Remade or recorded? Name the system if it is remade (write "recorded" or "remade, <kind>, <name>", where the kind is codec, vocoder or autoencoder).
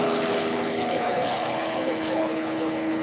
remade, codec, HILCodec